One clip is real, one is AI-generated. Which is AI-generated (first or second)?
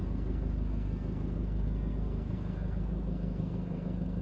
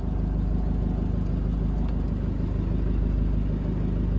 first